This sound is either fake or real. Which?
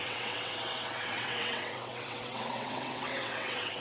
fake